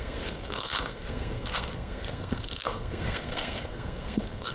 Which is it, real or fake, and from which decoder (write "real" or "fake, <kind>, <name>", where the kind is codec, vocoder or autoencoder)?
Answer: fake, codec, SNAC